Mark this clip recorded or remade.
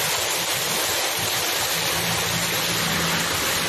recorded